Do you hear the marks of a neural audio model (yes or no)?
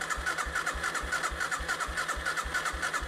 no